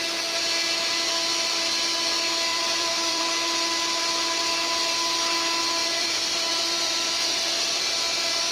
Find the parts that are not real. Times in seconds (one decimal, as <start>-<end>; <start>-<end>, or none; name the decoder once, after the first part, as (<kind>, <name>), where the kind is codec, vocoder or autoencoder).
2.5-3.2 (vocoder, BigVGAN v2); 5.8-7.1